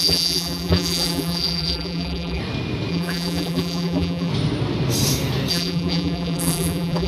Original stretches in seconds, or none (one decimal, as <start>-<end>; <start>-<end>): 2.4-2.9; 4.3-5.5